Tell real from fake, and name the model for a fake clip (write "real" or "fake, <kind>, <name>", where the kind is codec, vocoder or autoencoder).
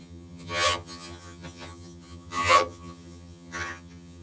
fake, vocoder, HiFi-GAN